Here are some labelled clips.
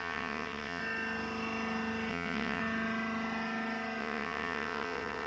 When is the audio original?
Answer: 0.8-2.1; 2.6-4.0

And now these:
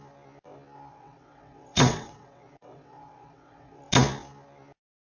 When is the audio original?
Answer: 0.0-0.9; 3.8-5.0

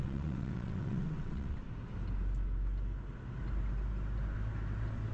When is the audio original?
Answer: 1.6-5.1

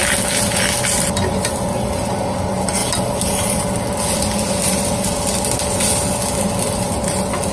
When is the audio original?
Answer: 0.0-7.5